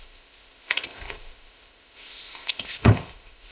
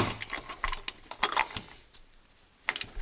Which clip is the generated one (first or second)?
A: first